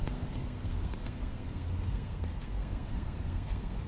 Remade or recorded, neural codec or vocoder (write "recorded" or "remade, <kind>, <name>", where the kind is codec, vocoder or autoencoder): remade, codec, SNAC